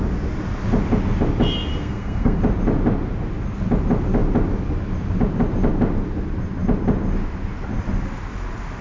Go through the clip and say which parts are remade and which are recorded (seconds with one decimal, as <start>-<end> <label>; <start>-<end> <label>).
0.0-1.8 recorded; 1.8-2.4 remade; 2.4-8.8 recorded